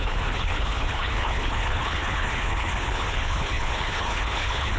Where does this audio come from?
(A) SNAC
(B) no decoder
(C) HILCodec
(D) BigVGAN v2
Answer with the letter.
C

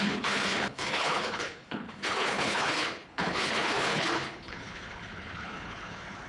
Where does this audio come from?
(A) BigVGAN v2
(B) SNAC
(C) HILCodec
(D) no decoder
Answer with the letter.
C